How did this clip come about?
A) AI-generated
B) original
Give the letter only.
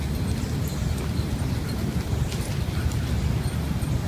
B